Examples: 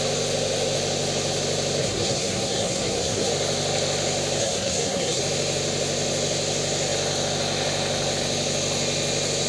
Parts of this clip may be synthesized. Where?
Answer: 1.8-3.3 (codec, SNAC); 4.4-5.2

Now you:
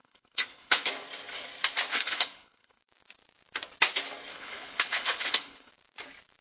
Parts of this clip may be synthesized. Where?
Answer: 0.0-0.9 (codec, HILCodec); 1.9-2.8; 4.3-5.7

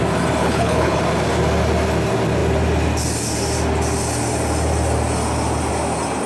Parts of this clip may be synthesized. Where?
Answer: 0.4-1.0 (codec, HILCodec)

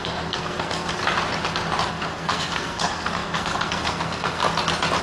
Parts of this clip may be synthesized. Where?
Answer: 0.0-1.0 (codec, SNAC); 1.9-4.4

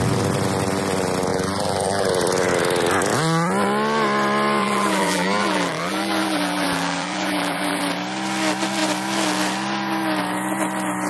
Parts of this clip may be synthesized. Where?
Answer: 1.3-2.1 (vocoder, BigVGAN v2); 4.6-7.8

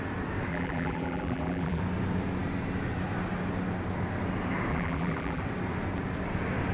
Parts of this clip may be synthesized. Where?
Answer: 0.5-1.8 (vocoder, BigVGAN v2); 4.7-5.4

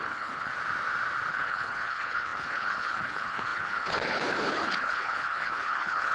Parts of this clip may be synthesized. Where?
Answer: 0.0-0.5 (codec, HILCodec); 1.3-6.1

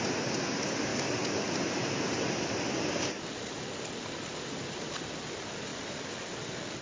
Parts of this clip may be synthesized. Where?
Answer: 0.9-5.0 (vocoder, BigVGAN v2); 5.7-6.2